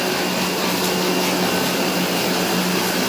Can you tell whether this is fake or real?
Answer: real